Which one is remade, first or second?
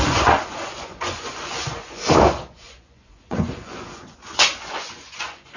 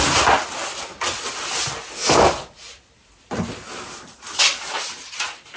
first